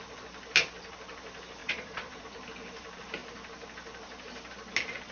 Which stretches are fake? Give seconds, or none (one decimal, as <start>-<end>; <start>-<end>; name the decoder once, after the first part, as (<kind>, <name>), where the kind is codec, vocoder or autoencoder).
1.6-2.2 (vocoder, Vocos)